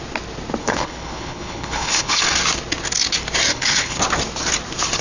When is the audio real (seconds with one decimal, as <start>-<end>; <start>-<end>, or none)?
0.0-0.6; 2.2-3.5; 4.0-5.0